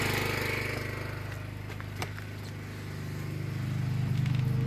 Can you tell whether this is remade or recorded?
recorded